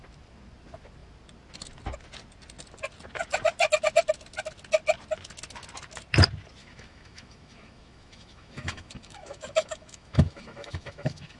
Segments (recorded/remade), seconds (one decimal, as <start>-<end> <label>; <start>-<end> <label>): 0.0-6.6 recorded; 6.6-11.4 remade